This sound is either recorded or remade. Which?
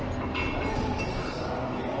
recorded